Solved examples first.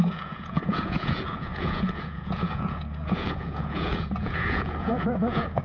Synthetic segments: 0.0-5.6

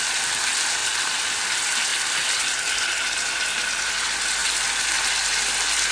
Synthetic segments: none

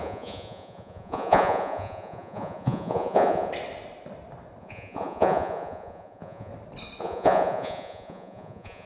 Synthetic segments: 0.0-3.5; 4.6-6.5; 7.0-8.9

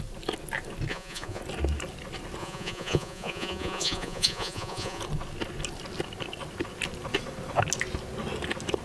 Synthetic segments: 0.9-1.4; 2.4-5.0

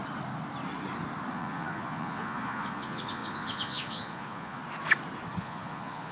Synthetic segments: 1.3-4.6; 5.4-6.1

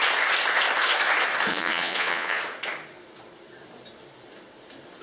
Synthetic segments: 1.5-2.4

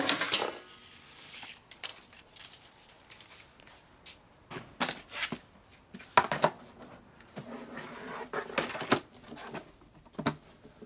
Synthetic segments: none

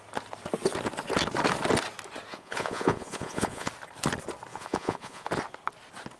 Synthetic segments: 2.3-3.7; 4.5-5.3